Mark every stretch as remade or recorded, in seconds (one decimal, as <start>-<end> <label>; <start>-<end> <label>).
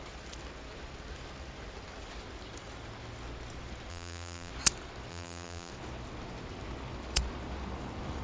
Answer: 0.0-3.9 recorded; 3.9-4.5 remade; 4.5-5.1 recorded; 5.1-5.7 remade; 5.7-8.2 recorded